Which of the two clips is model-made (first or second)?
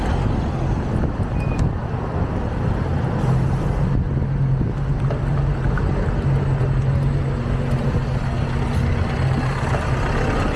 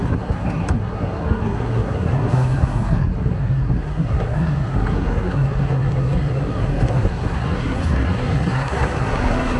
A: second